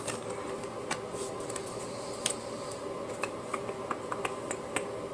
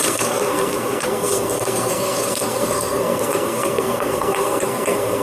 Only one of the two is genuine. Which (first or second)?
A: first